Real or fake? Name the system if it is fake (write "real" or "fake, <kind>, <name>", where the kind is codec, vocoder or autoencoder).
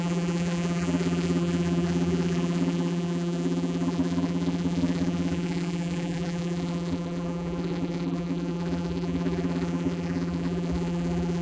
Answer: fake, vocoder, BigVGAN v2